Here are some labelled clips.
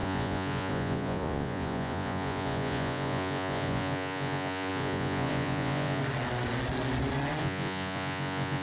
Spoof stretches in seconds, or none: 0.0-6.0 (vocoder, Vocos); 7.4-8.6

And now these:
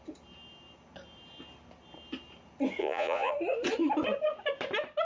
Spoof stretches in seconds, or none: 2.8-3.3 (vocoder, Vocos)

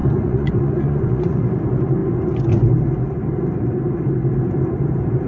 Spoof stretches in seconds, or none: 0.0-1.5 (vocoder, Vocos)

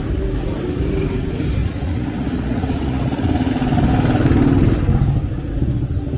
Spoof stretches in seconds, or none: 1.6-3.5 (vocoder, Vocos)

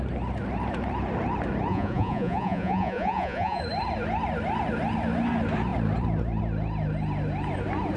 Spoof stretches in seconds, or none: 1.7-3.6 (vocoder, Vocos)

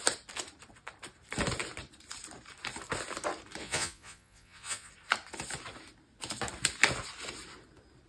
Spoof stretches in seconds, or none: 3.6-4.9 (vocoder, Vocos)